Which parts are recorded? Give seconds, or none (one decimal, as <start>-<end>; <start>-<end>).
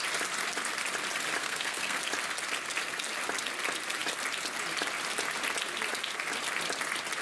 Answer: 0.0-1.4; 2.0-7.2